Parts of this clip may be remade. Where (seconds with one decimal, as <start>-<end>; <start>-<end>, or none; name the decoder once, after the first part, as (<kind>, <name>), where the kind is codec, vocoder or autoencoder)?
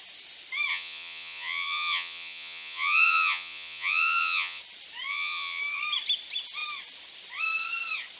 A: 0.7-4.6 (vocoder, Vocos); 5.1-5.6